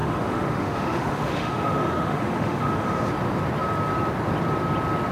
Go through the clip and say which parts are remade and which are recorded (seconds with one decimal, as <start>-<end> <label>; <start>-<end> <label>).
0.0-3.1 remade; 3.1-5.1 recorded